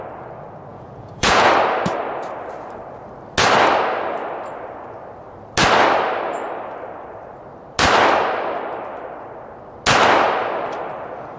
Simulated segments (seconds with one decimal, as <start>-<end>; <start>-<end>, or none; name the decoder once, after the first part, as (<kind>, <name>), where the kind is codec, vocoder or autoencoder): 0.7-1.5 (vocoder, Vocos)